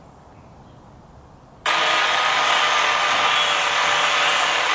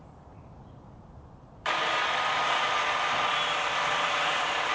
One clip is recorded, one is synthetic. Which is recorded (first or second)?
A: first